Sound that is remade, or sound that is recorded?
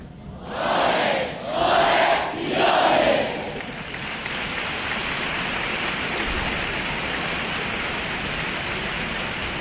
recorded